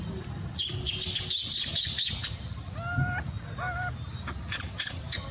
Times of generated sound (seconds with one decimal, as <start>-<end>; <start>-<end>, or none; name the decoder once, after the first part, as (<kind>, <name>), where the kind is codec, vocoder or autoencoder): none